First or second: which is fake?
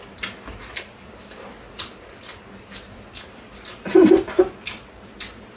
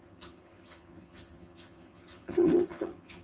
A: second